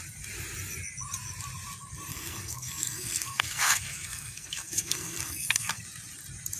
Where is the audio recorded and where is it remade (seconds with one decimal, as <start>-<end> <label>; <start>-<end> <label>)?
0.0-2.1 recorded; 2.1-5.8 remade; 5.8-6.6 recorded